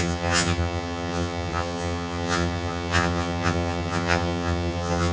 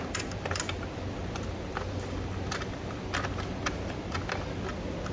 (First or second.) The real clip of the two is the second